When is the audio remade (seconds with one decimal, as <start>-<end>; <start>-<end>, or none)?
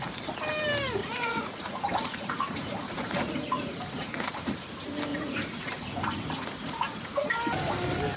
1.0-4.3; 5.1-7.3